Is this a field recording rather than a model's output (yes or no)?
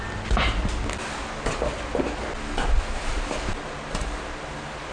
yes